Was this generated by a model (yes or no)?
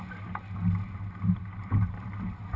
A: no